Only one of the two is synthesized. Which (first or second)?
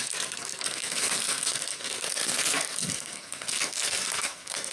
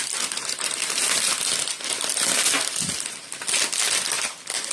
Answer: first